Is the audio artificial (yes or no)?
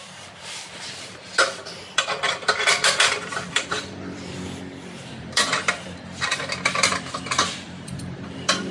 yes